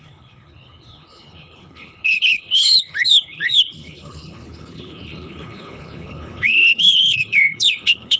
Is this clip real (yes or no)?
no